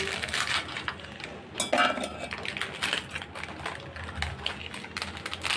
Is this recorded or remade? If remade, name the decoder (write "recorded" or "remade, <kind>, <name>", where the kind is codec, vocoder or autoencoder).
recorded